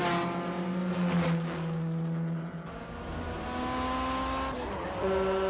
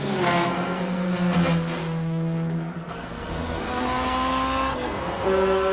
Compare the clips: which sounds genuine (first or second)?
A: first